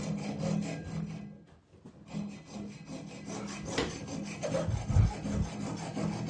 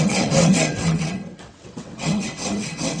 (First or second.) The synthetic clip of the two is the second